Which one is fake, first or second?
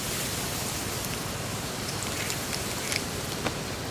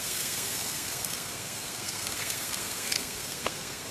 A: second